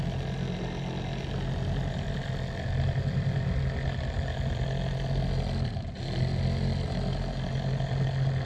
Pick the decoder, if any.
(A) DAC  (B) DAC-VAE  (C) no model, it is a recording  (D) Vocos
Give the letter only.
C